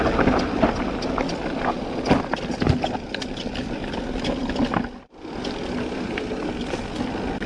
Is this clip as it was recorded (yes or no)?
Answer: yes